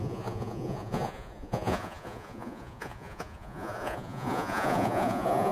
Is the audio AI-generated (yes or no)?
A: yes